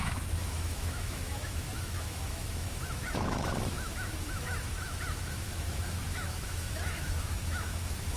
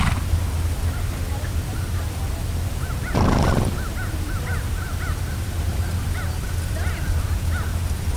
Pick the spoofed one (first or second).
first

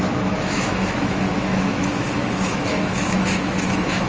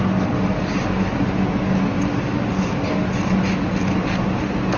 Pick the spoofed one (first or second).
first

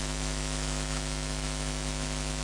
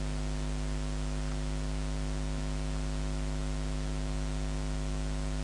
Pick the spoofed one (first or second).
first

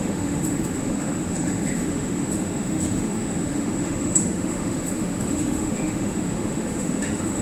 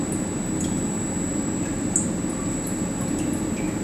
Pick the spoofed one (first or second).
first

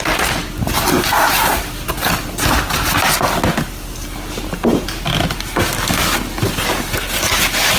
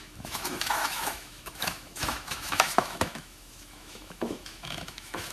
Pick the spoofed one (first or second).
second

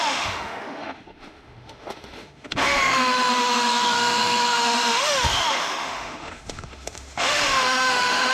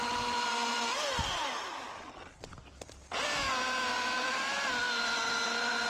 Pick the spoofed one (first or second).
first